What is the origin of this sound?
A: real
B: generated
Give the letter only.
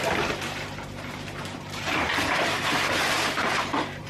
B